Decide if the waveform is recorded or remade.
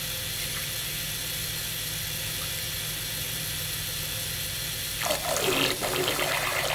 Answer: recorded